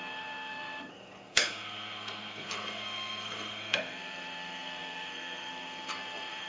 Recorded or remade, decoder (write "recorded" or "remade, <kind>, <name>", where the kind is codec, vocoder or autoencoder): remade, codec, SNAC